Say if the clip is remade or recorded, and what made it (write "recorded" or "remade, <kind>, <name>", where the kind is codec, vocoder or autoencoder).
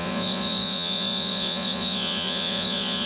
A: remade, vocoder, Vocos